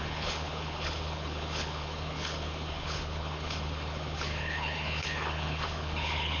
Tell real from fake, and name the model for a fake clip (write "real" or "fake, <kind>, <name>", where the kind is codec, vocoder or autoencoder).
fake, codec, HILCodec